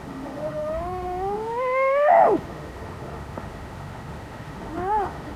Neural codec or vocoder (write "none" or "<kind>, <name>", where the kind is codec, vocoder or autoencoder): autoencoder, DAC-VAE